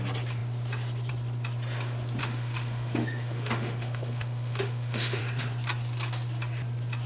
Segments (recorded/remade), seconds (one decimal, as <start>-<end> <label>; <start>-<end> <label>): 0.0-2.2 recorded; 2.2-5.2 remade; 5.2-7.1 recorded